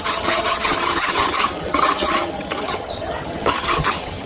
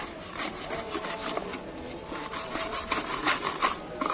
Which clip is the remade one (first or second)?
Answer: first